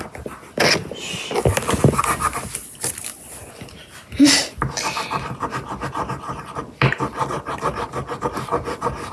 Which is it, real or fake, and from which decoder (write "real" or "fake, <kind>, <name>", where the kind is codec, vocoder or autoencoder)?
real